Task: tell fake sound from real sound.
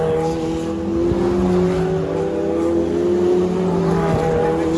real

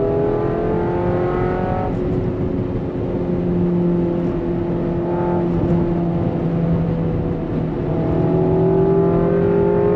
real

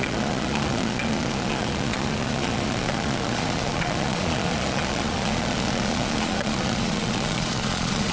fake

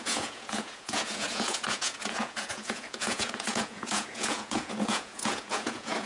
fake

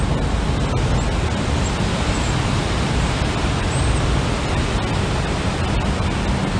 real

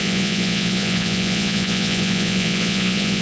fake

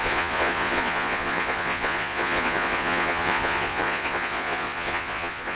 fake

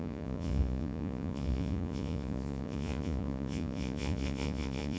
fake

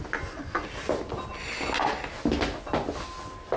real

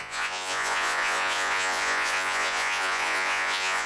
fake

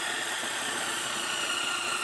fake